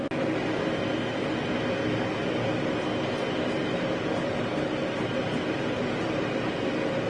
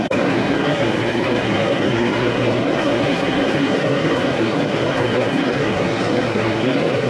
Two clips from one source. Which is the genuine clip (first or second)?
first